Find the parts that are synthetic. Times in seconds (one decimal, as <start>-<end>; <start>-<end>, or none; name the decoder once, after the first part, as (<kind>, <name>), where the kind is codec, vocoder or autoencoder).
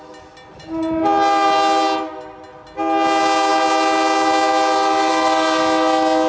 none